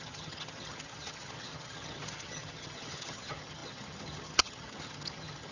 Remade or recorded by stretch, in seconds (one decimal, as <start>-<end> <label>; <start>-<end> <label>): 0.0-5.5 remade